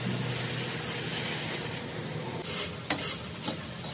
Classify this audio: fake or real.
real